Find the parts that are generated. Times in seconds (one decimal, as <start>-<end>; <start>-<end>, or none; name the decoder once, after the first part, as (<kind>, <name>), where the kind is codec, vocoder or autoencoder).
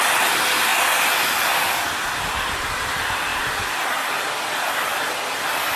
0.0-0.7 (vocoder, BigVGAN v2); 2.2-4.9